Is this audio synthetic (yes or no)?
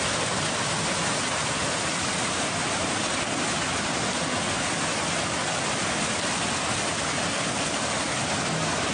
no